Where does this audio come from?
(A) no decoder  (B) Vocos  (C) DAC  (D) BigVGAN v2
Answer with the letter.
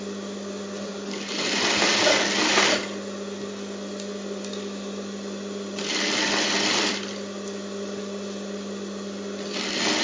A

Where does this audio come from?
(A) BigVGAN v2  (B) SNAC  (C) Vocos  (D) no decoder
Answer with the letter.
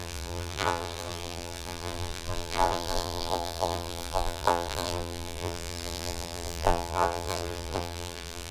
A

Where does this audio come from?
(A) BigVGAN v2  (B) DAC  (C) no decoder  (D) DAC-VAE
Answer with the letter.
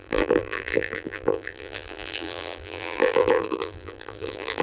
A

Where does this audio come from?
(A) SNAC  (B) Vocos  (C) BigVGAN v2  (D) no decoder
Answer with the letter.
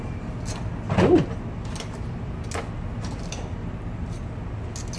D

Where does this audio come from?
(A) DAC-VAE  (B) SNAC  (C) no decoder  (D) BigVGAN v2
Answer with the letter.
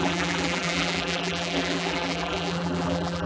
D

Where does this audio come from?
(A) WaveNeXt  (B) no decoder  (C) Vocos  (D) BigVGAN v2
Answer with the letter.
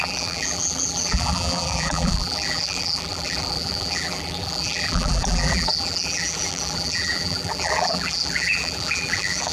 D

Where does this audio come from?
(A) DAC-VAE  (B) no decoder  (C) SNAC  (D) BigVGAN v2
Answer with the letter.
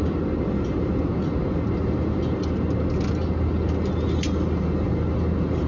B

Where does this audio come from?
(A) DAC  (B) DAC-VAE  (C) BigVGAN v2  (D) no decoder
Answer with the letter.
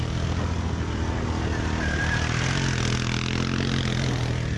D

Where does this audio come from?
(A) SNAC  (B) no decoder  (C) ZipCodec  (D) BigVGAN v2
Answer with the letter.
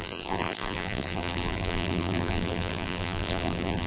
D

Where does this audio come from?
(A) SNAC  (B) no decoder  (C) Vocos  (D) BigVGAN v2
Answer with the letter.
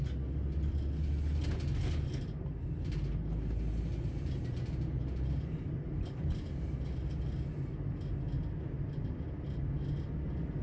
B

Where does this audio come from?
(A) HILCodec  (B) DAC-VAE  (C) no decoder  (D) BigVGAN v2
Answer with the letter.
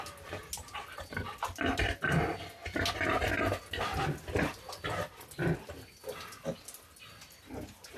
C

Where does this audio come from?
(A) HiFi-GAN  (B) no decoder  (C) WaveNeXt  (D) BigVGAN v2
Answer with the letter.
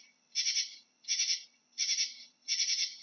B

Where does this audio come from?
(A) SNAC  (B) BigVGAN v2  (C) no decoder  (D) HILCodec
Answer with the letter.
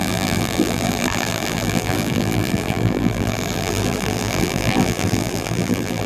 B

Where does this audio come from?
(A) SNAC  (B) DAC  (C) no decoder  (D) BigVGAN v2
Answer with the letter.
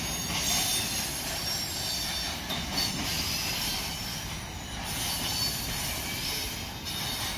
C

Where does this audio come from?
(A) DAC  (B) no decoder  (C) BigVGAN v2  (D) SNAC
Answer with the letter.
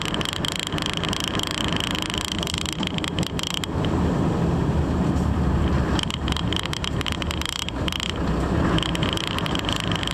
B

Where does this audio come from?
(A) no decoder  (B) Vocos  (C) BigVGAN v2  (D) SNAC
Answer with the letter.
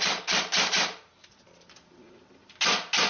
A